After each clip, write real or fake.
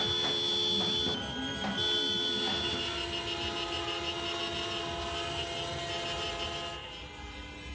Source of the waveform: real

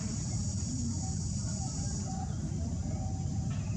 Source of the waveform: fake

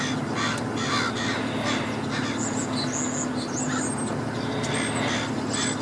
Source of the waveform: real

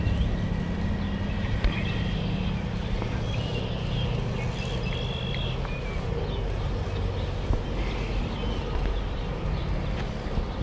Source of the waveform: real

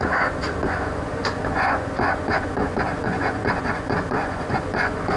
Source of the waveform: fake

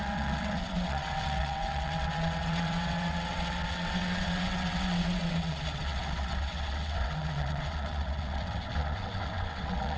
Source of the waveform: fake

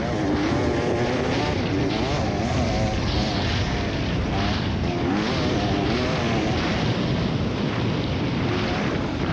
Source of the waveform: real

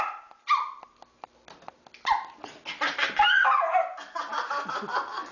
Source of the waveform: real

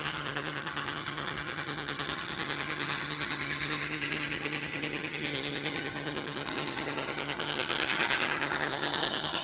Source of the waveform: fake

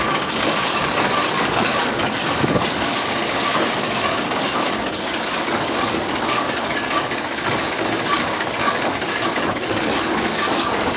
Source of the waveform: fake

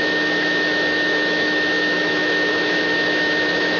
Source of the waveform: fake